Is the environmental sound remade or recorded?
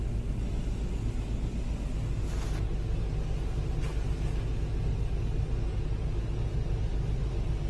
recorded